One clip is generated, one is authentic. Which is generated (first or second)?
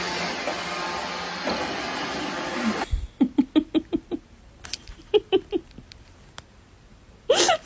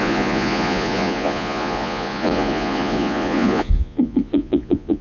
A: second